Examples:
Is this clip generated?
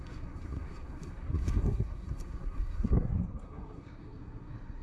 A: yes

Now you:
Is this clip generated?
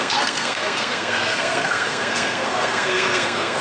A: yes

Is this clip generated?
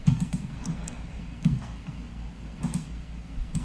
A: yes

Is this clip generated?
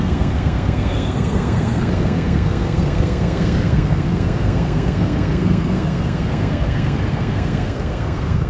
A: yes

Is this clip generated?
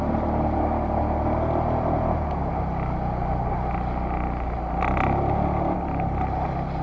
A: no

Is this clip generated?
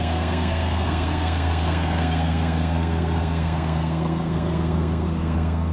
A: yes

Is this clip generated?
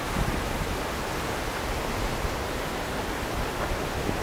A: no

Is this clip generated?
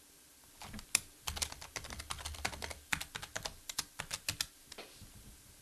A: no